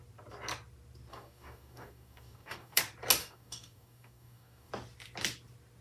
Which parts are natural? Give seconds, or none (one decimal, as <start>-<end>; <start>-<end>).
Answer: 0.0-1.1; 2.8-3.2; 4.7-5.8